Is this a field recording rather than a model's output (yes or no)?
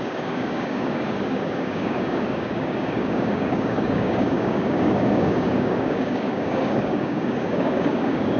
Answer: no